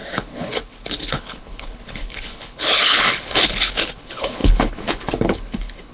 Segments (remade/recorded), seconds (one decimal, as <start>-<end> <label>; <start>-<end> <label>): 0.0-5.9 remade